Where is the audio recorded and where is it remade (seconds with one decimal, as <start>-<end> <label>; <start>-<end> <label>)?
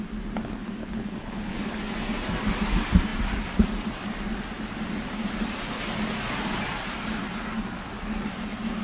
0.0-0.8 recorded; 0.8-1.8 remade; 1.8-8.8 recorded